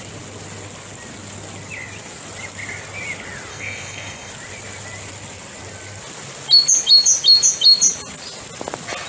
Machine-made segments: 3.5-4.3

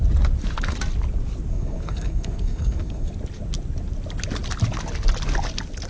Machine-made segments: 1.5-3.1

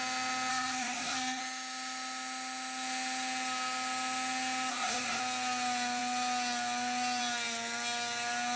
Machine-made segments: 0.5-1.4; 4.7-5.2

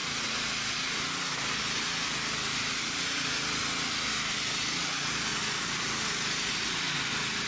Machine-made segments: none